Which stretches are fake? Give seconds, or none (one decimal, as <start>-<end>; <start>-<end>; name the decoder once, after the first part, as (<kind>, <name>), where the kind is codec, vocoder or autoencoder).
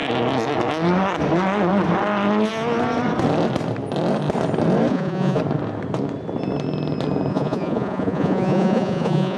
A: 4.9-5.4 (vocoder, Vocos); 7.3-9.4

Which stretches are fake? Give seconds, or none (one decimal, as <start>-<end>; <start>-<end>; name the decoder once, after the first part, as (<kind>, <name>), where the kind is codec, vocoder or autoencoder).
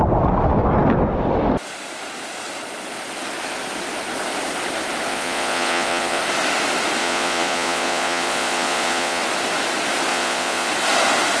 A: 5.1-6.2 (vocoder, Vocos); 7.0-9.2; 10.1-10.7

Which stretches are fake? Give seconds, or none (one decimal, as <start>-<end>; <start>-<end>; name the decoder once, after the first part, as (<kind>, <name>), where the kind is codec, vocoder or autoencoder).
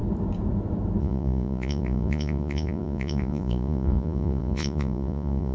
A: 1.0-5.5 (vocoder, Vocos)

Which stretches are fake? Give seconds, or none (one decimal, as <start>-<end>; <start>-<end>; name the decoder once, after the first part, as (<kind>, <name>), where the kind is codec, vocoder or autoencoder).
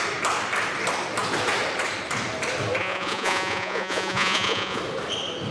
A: 2.8-4.8 (vocoder, Vocos)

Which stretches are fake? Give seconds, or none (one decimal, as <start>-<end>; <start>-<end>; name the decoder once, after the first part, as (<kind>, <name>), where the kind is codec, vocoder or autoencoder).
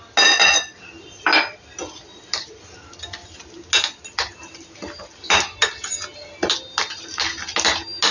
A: none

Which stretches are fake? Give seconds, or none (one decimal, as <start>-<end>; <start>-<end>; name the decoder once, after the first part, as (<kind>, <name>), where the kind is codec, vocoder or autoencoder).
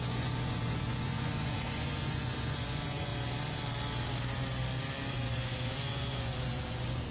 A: 0.0-3.1 (vocoder, Vocos); 5.1-7.1